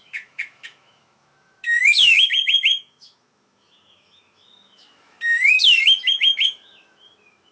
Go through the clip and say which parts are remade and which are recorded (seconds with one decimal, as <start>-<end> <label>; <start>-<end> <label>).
0.0-7.5 remade